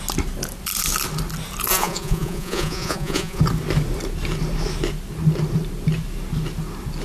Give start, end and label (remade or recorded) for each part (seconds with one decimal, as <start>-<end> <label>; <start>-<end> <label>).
0.0-1.7 recorded; 1.7-3.4 remade; 3.4-7.0 recorded

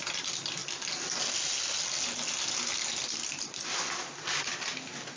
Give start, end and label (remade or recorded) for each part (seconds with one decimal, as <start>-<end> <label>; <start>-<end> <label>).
0.0-5.2 recorded

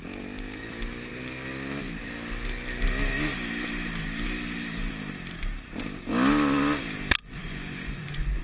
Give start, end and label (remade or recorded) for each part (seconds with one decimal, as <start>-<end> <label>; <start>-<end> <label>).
0.0-7.2 recorded; 7.2-8.4 remade

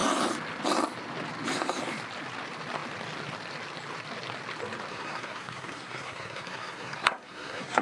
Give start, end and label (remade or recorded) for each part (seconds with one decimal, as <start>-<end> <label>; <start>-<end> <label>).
0.0-4.9 recorded; 4.9-7.8 remade

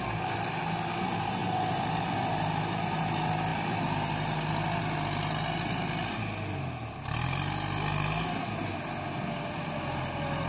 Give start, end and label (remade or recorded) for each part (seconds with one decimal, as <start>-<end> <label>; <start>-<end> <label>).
0.0-10.5 recorded

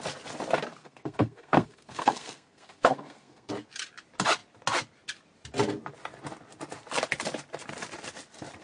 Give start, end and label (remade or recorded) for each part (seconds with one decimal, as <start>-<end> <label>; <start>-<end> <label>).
0.0-0.8 recorded; 0.8-3.5 remade; 3.5-8.6 recorded

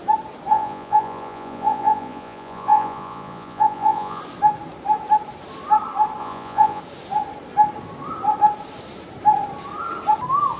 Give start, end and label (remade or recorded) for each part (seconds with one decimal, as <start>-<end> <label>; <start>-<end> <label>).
0.0-0.5 recorded; 0.5-4.2 remade; 4.2-6.2 recorded; 6.2-6.8 remade; 6.8-10.6 recorded

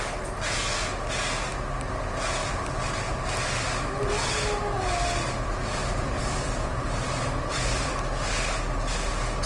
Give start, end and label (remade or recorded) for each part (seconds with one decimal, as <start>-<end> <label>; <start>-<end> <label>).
0.0-5.8 recorded; 5.8-7.9 remade; 7.9-9.5 recorded